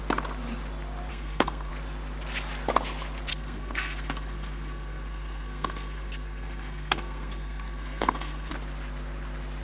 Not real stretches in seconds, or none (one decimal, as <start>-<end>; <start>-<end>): 1.1-1.7; 3.3-8.5